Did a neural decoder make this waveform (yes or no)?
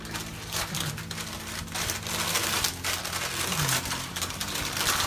no